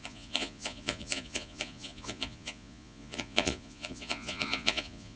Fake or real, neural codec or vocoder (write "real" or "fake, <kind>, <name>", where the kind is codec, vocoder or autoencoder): fake, vocoder, Vocos